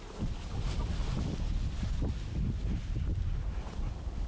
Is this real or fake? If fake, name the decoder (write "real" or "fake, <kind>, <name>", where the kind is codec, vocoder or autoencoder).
real